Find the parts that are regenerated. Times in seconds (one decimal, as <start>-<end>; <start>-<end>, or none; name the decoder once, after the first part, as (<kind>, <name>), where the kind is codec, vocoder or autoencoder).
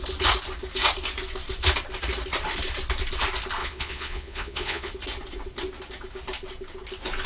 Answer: 3.6-4.9 (vocoder, Vocos)